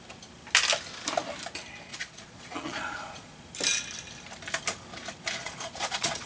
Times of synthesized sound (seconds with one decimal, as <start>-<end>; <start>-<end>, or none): 1.9-3.5; 5.4-6.3